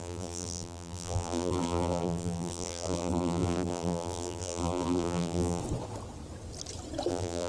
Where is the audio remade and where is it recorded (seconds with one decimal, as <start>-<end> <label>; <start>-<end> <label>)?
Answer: 0.0-5.6 remade; 5.6-7.1 recorded; 7.1-7.5 remade